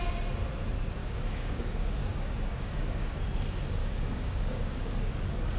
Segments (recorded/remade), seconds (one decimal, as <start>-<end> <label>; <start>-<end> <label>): 0.0-1.0 recorded; 1.0-3.2 remade; 3.2-3.8 recorded; 3.8-5.6 remade